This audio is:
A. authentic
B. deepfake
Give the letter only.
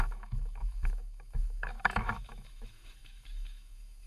B